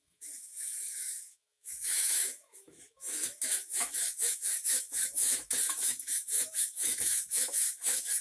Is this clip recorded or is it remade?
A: remade